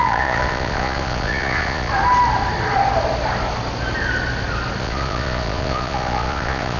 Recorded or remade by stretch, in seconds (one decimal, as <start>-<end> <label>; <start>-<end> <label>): 0.0-1.9 remade; 1.9-4.8 recorded; 4.8-6.8 remade